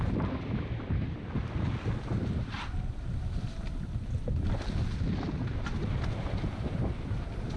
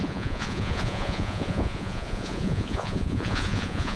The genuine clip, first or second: first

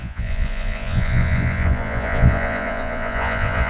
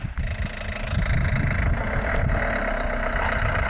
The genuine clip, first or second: second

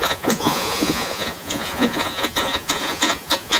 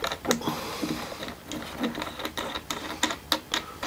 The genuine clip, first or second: second